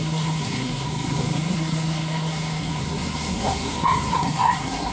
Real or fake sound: fake